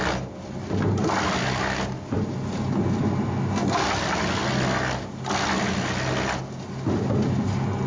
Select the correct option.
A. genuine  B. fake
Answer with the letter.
A